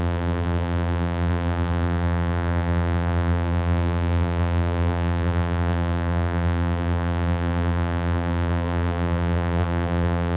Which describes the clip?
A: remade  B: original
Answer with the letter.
A